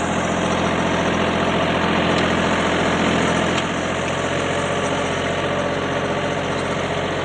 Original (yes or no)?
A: yes